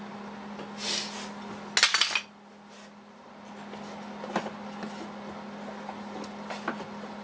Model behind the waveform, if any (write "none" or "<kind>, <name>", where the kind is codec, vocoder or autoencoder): none